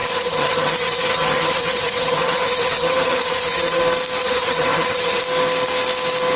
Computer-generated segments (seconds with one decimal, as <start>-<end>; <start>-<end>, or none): 0.0-3.8; 4.2-5.2